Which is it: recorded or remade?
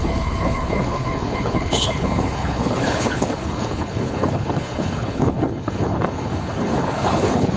remade